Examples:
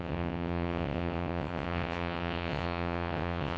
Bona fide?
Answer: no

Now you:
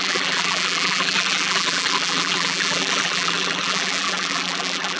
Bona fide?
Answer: no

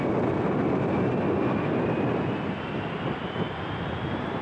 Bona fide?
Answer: yes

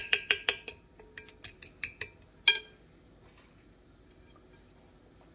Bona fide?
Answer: yes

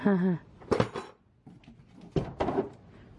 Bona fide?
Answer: yes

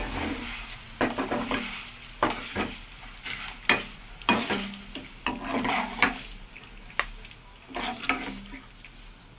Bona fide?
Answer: yes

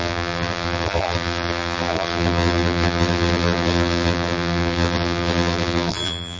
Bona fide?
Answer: no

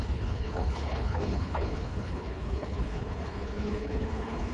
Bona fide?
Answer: no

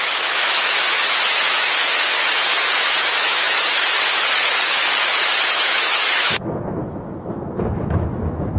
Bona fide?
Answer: no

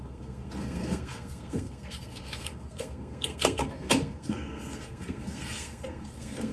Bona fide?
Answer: no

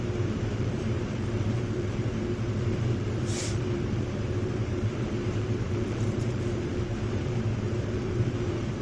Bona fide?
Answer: no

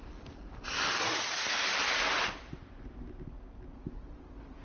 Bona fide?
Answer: yes